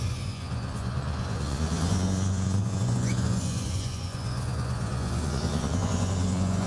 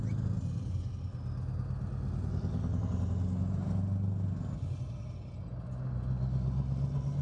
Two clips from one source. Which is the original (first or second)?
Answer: second